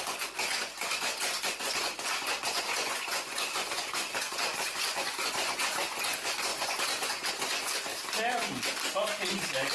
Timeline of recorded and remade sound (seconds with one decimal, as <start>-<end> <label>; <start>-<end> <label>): 0.0-7.9 remade; 7.9-9.7 recorded